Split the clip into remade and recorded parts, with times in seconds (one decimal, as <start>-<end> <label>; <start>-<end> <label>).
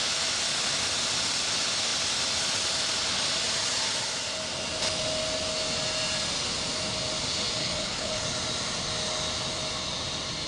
0.0-7.6 recorded; 7.6-8.2 remade; 8.2-10.5 recorded